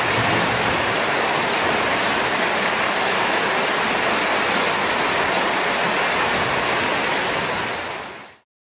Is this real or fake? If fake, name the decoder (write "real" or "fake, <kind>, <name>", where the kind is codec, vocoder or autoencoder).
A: real